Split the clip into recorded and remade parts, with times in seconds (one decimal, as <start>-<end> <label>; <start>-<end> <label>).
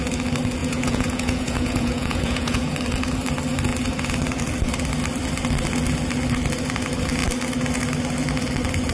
0.0-0.6 recorded; 0.6-2.7 remade; 2.7-8.9 recorded